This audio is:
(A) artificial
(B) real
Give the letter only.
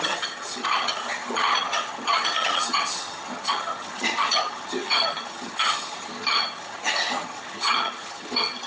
A